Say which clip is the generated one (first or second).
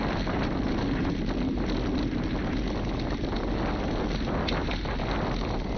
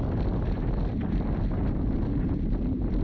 second